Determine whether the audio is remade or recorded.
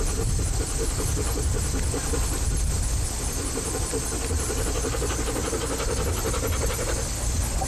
recorded